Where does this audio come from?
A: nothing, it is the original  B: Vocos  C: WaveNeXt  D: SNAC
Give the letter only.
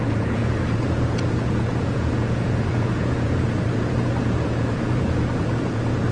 B